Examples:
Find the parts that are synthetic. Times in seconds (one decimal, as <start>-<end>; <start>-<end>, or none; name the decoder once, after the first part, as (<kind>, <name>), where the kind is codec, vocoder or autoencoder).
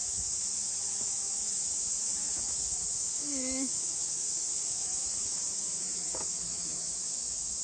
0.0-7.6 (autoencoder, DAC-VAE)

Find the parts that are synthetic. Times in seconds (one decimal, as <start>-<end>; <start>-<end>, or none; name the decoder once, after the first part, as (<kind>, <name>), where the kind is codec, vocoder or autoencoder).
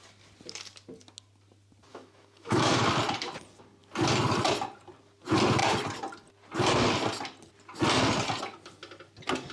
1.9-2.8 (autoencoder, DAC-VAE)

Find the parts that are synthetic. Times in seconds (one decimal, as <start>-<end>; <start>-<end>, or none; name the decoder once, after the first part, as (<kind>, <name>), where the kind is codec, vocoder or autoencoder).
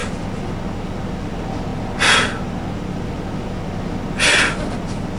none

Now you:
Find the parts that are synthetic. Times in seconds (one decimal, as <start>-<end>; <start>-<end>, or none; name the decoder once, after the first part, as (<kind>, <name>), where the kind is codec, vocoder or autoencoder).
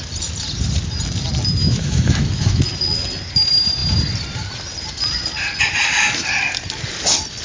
1.6-2.6 (autoencoder, DAC-VAE)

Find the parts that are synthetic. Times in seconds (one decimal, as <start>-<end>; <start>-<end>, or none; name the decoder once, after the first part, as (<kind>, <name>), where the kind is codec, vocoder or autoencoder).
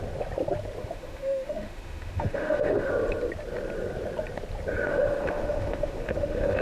0.8-2.9 (autoencoder, DAC-VAE); 4.9-6.6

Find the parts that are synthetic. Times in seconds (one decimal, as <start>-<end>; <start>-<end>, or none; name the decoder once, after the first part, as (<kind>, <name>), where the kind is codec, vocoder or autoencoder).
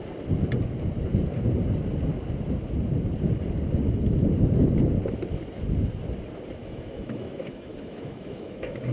6.6-8.9 (autoencoder, DAC-VAE)